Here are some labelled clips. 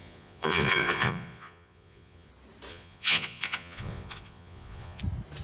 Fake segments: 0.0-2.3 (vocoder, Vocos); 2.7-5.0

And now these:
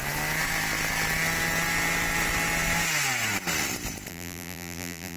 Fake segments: 4.1-5.2 (vocoder, BigVGAN v2)

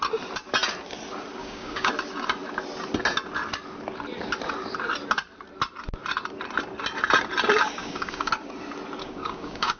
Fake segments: 1.4-1.9 (codec, DAC); 7.8-8.3; 9.0-9.8

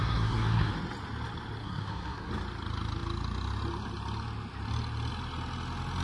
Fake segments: 0.0-0.7 (codec, SNAC); 1.6-2.3

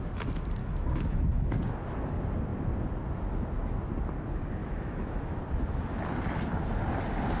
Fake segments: 0.6-1.5 (autoencoder, DAC-VAE); 4.6-5.4

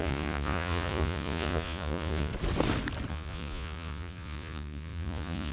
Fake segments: 0.0-2.3 (vocoder, Vocos); 3.1-5.5

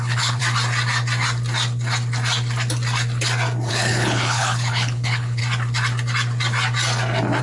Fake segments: 0.0-0.4 (codec, HILCodec); 3.7-5.4

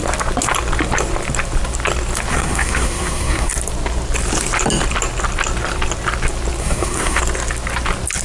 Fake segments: 2.3-3.5 (codec, SNAC); 6.6-7.2